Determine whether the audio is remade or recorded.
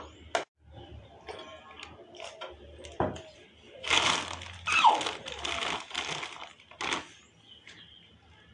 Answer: recorded